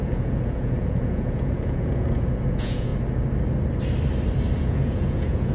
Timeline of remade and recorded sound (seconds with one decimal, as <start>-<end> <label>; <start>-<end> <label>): 0.0-2.9 remade; 2.9-4.6 recorded; 4.6-5.5 remade